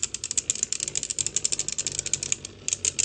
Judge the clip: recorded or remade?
recorded